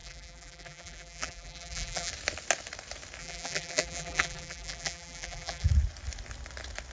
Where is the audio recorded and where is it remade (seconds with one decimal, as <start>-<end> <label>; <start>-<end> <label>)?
0.0-2.1 remade; 2.1-3.2 recorded; 3.2-5.7 remade; 5.7-6.9 recorded